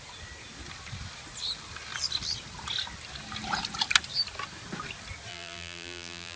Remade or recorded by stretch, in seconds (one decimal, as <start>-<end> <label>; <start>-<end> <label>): 0.0-5.3 recorded; 5.3-6.4 remade